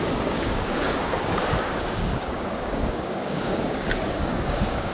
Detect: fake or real fake